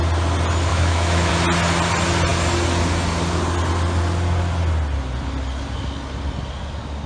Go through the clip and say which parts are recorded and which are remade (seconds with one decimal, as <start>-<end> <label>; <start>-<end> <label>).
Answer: 0.0-0.7 recorded; 0.7-1.3 remade; 1.3-7.1 recorded